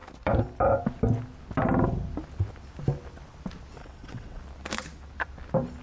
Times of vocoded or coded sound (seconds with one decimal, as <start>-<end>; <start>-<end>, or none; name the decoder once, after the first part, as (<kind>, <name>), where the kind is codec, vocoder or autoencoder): 3.8-4.4 (vocoder, WaveNeXt)